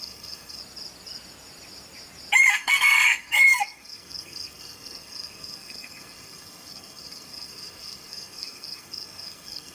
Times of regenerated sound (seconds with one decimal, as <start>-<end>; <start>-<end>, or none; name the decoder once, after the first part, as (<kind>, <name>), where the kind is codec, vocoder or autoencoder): 0.0-0.6 (codec, SNAC); 2.5-9.7